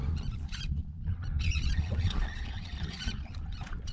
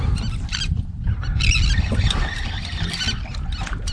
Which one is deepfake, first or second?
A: first